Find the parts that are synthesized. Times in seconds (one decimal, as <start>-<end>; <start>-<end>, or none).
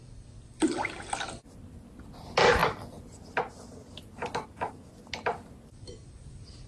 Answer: none